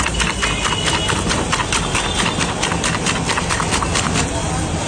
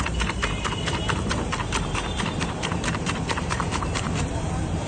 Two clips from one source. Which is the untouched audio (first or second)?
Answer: first